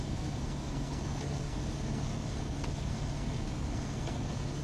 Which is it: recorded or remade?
remade